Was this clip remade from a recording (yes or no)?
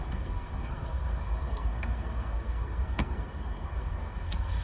yes